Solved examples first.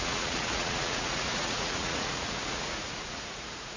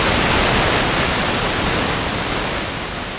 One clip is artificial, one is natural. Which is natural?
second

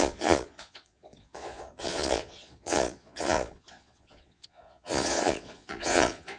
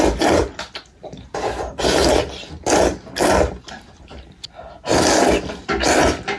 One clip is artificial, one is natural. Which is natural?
second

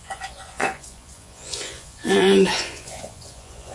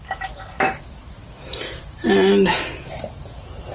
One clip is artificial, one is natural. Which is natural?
second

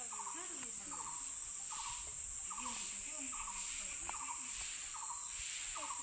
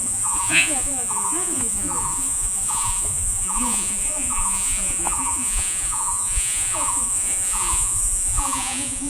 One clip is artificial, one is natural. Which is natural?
first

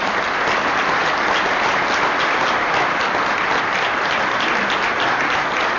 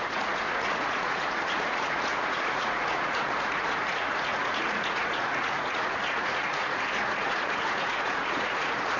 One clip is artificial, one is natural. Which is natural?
first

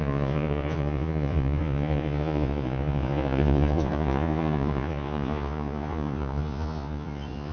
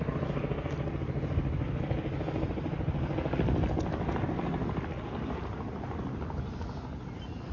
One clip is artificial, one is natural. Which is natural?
second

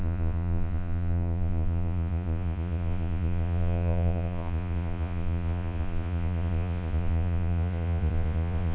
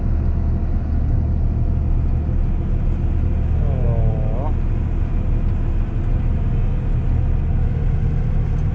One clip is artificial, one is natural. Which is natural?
second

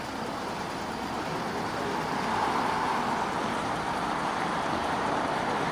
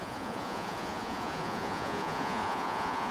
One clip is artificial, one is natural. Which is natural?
first